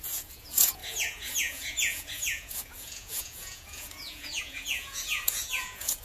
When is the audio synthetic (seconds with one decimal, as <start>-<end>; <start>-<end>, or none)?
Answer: 0.0-6.0